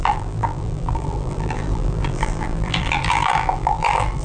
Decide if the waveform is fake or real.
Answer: fake